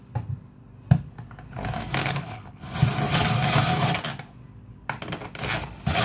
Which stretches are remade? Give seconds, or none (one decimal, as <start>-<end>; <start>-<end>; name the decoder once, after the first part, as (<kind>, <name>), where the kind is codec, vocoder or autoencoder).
2.0-2.6 (codec, HILCodec)

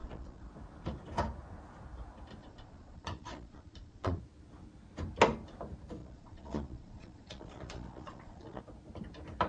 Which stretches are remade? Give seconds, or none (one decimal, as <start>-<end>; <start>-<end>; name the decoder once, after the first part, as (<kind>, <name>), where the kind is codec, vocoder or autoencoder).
0.0-0.5 (vocoder, Vocos); 2.4-4.2; 6.0-8.6

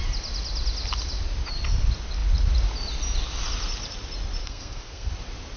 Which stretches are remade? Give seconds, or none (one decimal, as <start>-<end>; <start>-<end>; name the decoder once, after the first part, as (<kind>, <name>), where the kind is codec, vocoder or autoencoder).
4.4-5.1 (codec, SNAC)

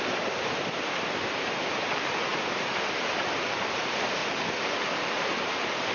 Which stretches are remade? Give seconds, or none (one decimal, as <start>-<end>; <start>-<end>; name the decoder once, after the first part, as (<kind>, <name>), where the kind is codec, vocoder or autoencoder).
0.0-4.2 (vocoder, BigVGAN v2); 4.9-5.9

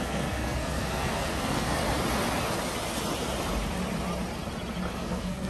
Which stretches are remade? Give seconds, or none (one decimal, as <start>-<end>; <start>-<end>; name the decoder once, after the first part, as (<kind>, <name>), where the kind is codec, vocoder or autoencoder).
0.0-1.8 (codec, SNAC); 4.9-5.5